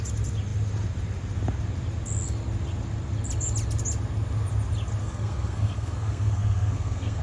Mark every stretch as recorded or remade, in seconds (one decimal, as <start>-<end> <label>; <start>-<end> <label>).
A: 0.0-5.0 recorded; 5.0-7.2 remade